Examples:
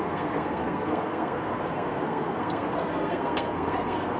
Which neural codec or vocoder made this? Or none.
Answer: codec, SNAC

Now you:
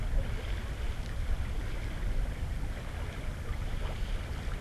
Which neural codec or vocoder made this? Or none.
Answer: none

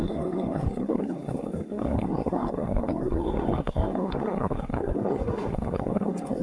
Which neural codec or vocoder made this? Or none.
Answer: codec, SNAC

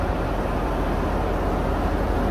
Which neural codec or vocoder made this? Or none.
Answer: none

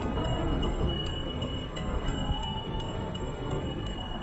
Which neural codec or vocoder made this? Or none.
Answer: codec, SNAC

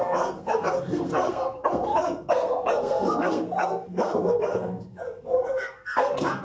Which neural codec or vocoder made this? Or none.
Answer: codec, SNAC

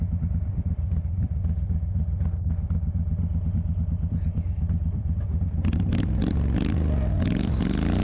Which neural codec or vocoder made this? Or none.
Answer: none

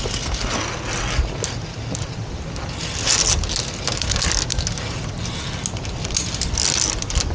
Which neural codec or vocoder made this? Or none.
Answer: none